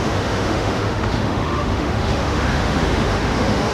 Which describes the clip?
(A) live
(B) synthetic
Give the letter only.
B